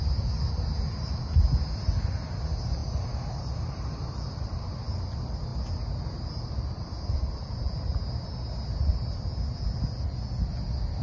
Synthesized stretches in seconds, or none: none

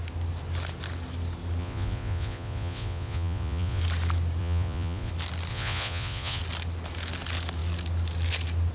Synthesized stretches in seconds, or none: 1.6-3.8; 4.4-5.1; 5.5-6.4

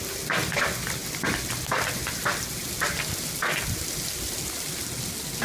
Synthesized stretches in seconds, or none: none